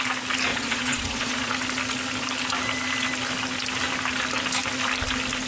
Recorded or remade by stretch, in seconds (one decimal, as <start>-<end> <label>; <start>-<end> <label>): 0.0-0.5 recorded; 0.5-1.5 remade; 1.5-5.5 recorded